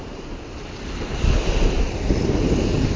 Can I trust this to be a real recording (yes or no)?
yes